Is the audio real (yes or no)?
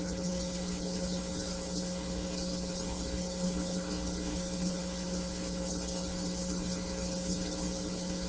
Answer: no